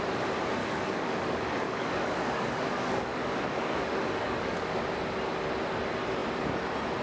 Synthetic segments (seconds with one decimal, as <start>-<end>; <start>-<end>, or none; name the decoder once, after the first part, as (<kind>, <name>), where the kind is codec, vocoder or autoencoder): 0.6-4.8 (codec, DAC)